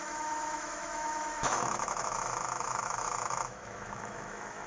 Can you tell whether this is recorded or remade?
remade